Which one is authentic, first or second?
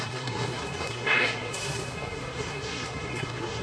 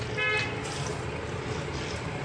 second